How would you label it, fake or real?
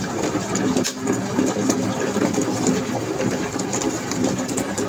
real